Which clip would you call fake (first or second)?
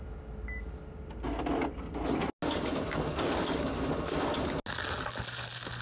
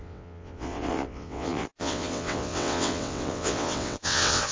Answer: second